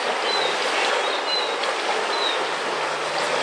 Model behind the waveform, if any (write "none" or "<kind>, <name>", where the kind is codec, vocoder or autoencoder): none